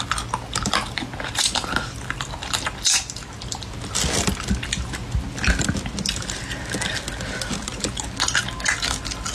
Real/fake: real